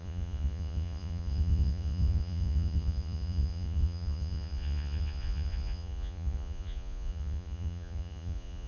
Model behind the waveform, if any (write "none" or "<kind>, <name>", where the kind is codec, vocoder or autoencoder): vocoder, Vocos